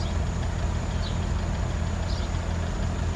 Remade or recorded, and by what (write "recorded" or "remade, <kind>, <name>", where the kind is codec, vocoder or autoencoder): recorded